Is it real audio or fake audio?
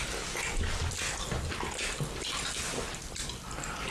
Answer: real